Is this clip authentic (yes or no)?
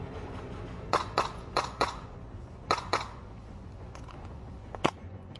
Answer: no